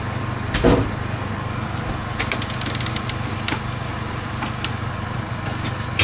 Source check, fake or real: real